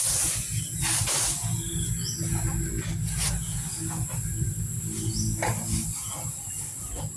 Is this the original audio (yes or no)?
yes